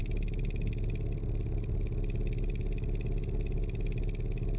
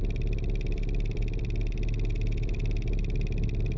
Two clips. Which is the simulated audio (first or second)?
second